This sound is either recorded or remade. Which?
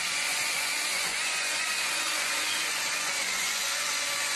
remade